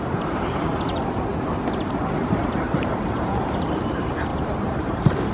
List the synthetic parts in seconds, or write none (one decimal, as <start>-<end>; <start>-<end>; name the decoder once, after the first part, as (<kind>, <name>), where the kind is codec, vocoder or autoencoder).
0.0-1.3 (vocoder, BigVGAN v2); 2.2-5.3